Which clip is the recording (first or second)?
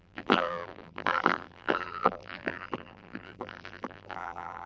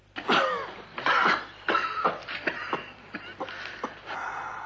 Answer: second